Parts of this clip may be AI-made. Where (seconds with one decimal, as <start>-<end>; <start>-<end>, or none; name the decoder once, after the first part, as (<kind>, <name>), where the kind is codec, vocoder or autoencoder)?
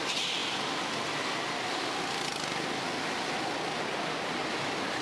none